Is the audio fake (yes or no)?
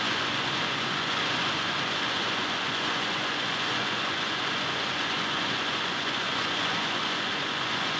yes